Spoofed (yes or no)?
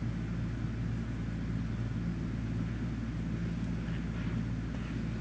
no